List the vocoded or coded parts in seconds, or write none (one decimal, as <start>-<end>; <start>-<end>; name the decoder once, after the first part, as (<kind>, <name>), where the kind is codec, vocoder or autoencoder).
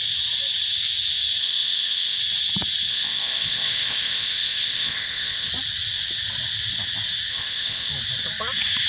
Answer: 1.4-2.2 (codec, ZipCodec); 2.9-5.5; 7.3-7.9